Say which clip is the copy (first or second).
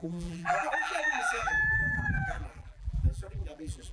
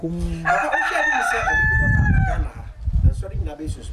first